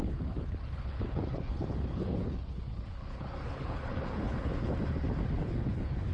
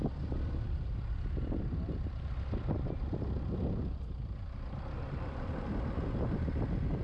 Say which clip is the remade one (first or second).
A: first